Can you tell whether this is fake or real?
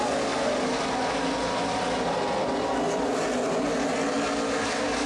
real